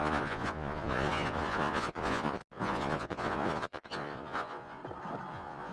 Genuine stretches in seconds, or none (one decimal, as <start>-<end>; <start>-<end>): 4.8-5.3